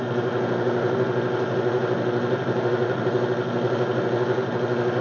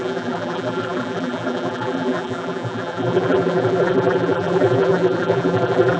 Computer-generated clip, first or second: second